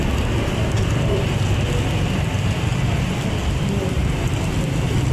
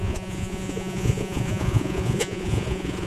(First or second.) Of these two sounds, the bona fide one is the first